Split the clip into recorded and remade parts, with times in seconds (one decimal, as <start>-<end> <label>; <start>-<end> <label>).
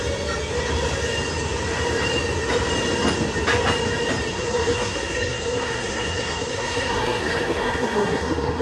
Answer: 0.0-4.3 recorded; 4.3-8.6 remade